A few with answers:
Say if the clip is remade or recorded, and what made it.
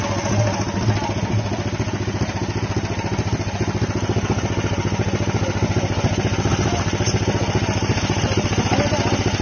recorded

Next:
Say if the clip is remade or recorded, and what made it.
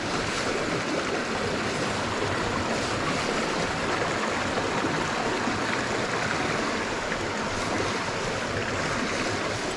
recorded